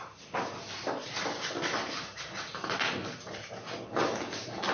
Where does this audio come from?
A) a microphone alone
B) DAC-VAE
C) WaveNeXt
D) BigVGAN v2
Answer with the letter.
A